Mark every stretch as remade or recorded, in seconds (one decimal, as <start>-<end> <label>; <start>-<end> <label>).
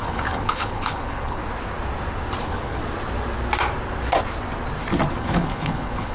0.0-1.4 remade; 1.4-2.4 recorded; 2.4-2.8 remade; 2.8-5.2 recorded; 5.2-6.1 remade